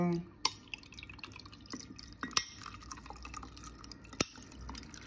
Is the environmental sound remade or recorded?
recorded